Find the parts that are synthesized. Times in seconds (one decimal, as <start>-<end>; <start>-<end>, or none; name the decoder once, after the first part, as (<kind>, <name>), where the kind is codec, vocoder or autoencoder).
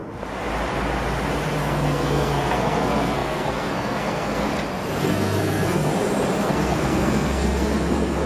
1.6-4.5 (codec, SNAC); 5.0-5.9; 6.4-8.3